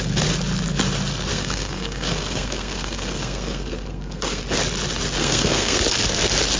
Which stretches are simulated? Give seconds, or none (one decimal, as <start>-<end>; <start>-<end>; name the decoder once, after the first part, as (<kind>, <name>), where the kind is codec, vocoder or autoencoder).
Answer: 1.3-4.4 (codec, SNAC); 5.2-5.8